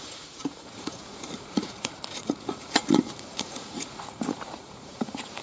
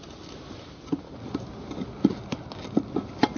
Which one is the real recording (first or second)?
second